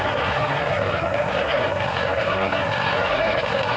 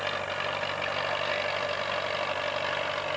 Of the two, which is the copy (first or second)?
first